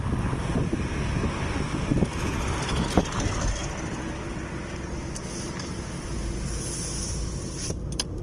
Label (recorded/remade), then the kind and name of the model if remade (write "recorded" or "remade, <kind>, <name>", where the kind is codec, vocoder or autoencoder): recorded